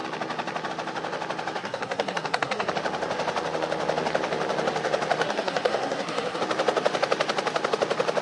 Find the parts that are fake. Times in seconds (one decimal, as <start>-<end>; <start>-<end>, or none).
1.6-2.7; 5.2-6.4

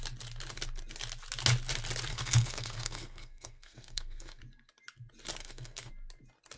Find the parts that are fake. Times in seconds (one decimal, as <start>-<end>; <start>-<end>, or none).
2.1-4.4; 5.4-5.9

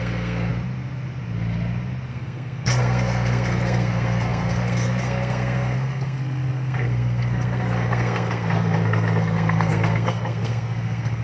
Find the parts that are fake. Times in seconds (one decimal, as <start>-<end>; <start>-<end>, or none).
0.0-0.5; 2.1-11.2

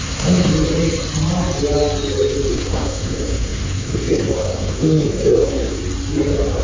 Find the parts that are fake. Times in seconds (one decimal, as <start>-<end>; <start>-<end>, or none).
0.0-0.5; 2.5-5.8

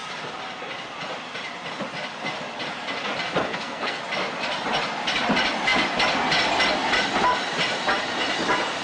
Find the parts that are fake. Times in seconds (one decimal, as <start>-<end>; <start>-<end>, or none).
3.4-4.0

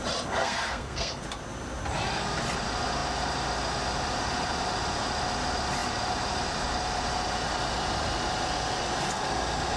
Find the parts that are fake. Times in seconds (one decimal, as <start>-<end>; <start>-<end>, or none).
0.4-1.2

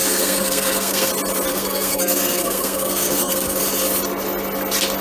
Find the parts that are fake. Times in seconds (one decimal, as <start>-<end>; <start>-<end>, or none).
0.0-1.1; 1.5-3.6

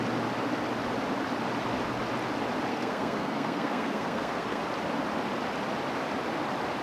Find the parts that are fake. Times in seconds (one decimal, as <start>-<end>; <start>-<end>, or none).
2.7-4.6